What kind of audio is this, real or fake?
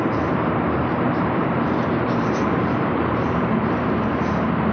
fake